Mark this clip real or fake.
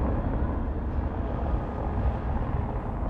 real